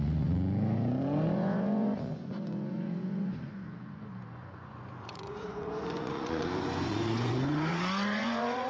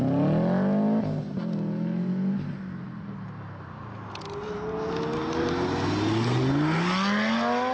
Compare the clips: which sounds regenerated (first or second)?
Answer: first